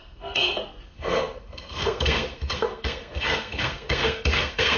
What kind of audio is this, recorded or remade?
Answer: remade